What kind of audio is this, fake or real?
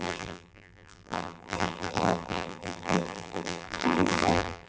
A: fake